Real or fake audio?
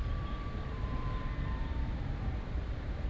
fake